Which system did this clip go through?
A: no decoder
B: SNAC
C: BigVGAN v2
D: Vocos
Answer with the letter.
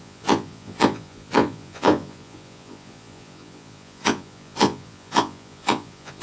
D